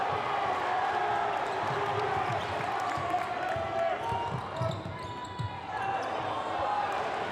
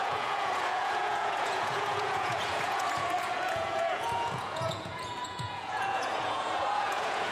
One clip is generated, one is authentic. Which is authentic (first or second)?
first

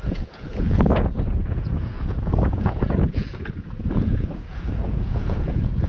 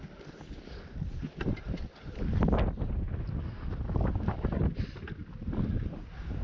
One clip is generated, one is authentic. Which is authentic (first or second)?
second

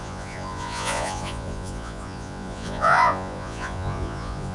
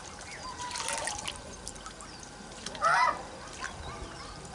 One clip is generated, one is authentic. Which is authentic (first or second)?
second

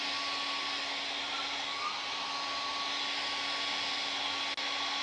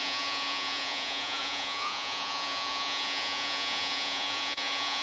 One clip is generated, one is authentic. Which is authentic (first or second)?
first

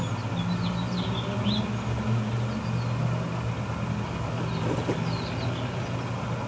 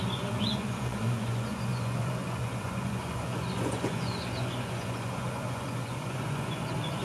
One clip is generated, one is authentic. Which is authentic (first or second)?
first